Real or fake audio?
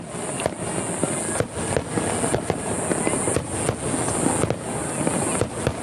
real